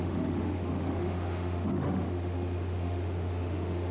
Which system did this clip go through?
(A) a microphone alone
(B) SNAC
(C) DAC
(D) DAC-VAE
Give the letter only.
D